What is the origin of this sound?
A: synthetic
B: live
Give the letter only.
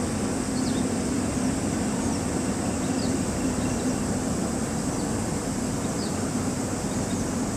B